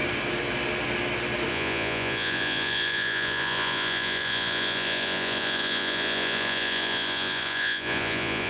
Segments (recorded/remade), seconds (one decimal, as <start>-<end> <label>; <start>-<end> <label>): 0.0-1.5 recorded; 1.5-8.5 remade